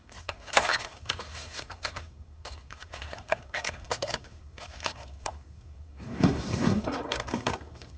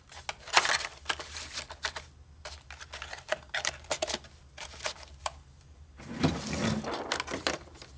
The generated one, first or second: first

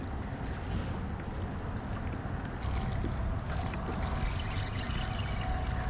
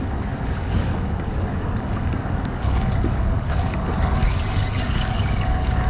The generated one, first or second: second